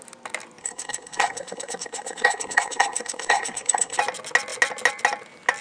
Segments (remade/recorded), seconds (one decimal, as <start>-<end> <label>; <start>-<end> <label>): 0.0-0.6 recorded; 0.6-4.0 remade; 4.0-5.6 recorded